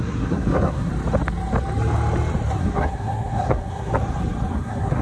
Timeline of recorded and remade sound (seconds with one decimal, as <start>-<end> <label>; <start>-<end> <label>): 0.0-0.9 remade; 0.9-2.6 recorded; 2.6-3.9 remade; 3.9-4.5 recorded; 4.5-5.0 remade